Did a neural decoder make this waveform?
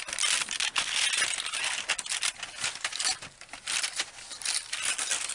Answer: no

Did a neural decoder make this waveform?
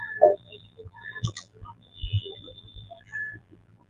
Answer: yes